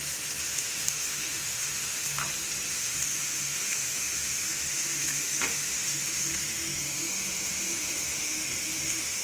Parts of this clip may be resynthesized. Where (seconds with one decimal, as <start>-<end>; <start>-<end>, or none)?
0.0-2.2; 2.7-9.2